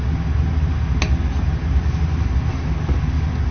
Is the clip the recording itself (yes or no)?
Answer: yes